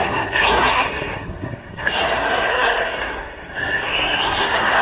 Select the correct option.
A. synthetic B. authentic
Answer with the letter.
A